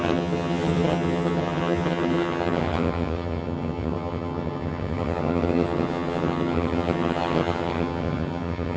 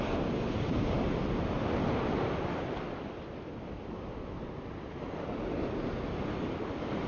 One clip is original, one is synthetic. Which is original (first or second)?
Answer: second